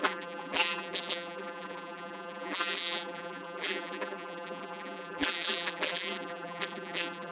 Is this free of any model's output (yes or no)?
no